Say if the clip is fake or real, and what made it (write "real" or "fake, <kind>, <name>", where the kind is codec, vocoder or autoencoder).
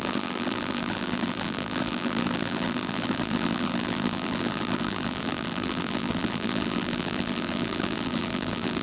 fake, vocoder, BigVGAN v2